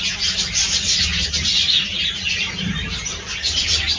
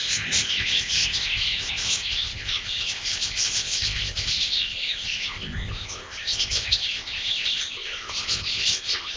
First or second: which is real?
first